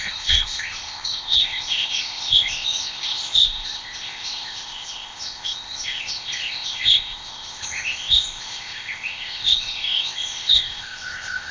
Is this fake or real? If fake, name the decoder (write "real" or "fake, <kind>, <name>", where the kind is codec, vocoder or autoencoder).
fake, codec, ZipCodec